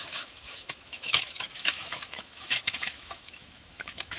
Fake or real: fake